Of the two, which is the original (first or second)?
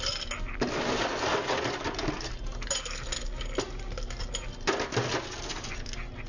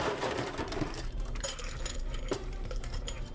first